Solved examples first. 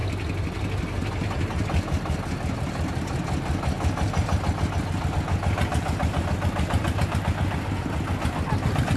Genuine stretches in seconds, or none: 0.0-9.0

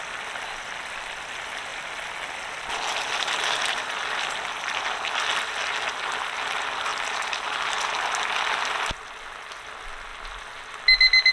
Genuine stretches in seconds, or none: 0.0-11.3

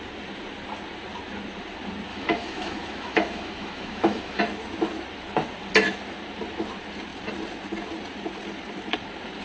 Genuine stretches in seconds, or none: 0.0-2.1; 4.4-9.4

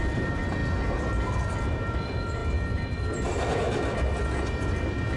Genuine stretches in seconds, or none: 0.6-1.5; 2.4-5.2

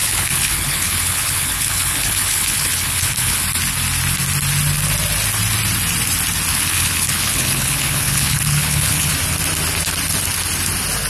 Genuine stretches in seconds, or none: 3.4-6.5; 9.1-11.1